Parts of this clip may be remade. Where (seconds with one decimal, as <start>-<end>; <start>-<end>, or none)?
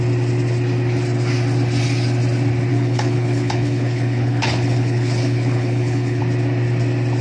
2.7-6.2